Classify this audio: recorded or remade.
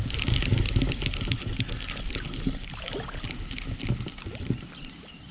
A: recorded